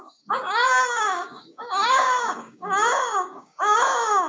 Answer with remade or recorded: remade